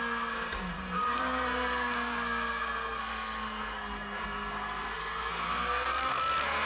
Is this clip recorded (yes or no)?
no